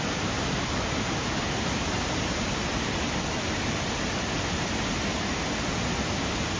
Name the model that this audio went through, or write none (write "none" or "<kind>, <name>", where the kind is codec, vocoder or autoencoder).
none